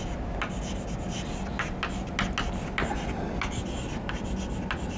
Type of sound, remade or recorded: recorded